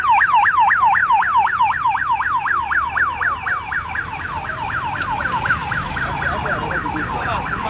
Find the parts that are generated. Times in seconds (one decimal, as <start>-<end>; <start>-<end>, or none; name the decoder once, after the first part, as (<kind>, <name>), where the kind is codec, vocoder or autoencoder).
0.0-5.6 (vocoder, BigVGAN v2); 6.4-7.7